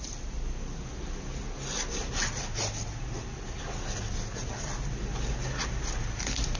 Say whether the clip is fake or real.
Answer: real